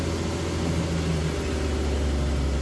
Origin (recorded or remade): recorded